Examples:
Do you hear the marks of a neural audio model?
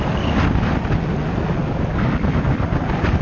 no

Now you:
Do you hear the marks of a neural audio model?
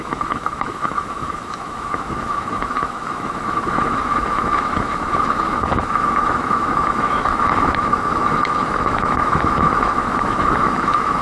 yes